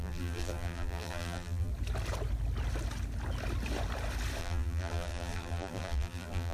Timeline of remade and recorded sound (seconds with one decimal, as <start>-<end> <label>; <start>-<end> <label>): 0.0-1.7 remade; 1.7-4.4 recorded; 4.4-6.5 remade